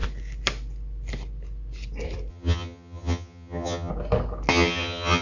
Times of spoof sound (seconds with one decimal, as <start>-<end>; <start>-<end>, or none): 2.3-3.9; 4.5-5.2